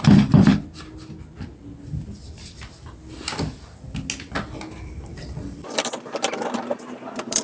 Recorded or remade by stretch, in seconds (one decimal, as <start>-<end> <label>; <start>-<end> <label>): 0.0-0.5 remade; 0.5-4.9 recorded; 4.9-7.4 remade